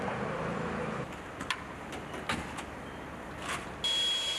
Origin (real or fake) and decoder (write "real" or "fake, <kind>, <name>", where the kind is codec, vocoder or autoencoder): real